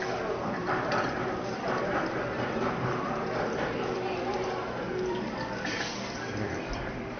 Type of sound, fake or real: fake